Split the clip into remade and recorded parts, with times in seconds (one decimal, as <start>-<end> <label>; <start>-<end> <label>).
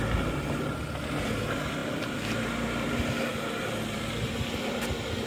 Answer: 0.0-1.8 recorded; 1.8-2.9 remade; 2.9-3.3 recorded; 3.3-4.1 remade; 4.1-5.3 recorded